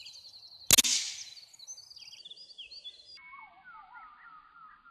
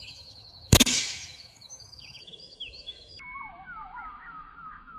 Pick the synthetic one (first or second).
second